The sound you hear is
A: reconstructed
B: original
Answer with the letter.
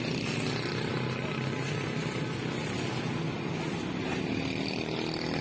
B